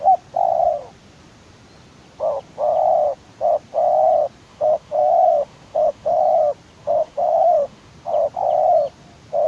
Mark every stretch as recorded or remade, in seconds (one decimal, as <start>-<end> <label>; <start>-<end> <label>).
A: 0.0-4.4 recorded; 4.4-6.2 remade; 6.2-6.8 recorded; 6.8-7.9 remade; 7.9-9.5 recorded

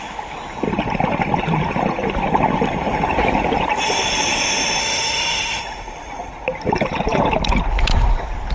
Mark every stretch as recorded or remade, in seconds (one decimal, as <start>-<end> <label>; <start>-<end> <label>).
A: 0.0-4.8 recorded; 4.8-5.6 remade; 5.6-8.5 recorded

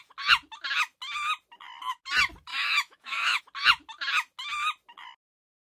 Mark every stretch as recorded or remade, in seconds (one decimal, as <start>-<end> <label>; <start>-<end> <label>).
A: 0.0-2.5 recorded; 2.5-3.4 remade; 3.4-5.7 recorded

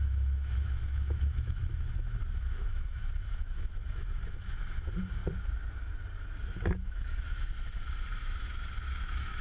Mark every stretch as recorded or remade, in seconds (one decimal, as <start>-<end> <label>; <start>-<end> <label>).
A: 0.0-5.2 remade; 5.2-6.4 recorded; 6.4-7.5 remade; 7.5-8.2 recorded; 8.2-9.4 remade

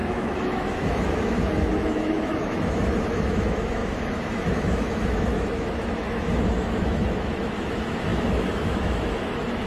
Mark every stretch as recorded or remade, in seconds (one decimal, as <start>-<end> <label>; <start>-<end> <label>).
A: 0.0-9.7 remade

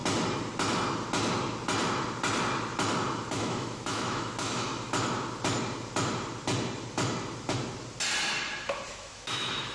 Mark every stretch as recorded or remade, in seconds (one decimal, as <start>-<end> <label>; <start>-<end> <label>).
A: 0.0-3.3 recorded; 3.3-4.7 remade; 4.7-8.9 recorded; 8.9-9.7 remade

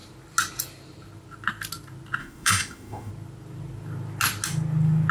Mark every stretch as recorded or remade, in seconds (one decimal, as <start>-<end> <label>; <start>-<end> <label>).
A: 0.0-2.2 recorded; 2.2-3.1 remade; 3.1-5.1 recorded

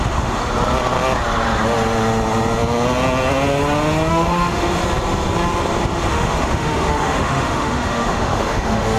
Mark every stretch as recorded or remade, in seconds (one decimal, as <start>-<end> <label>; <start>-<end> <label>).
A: 0.0-0.4 remade; 0.4-4.1 recorded; 4.1-4.8 remade; 4.8-6.1 recorded; 6.1-9.0 remade